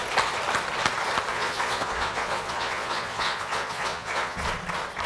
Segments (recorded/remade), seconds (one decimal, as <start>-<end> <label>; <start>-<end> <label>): 0.0-1.3 recorded; 1.3-4.4 remade; 4.4-5.1 recorded